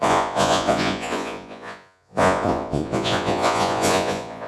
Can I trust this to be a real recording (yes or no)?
no